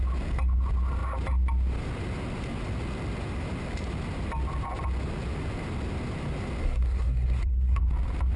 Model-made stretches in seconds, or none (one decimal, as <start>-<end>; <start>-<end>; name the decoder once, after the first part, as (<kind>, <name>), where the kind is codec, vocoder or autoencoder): 6.6-7.8 (codec, SNAC)